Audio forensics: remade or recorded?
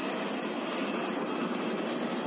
recorded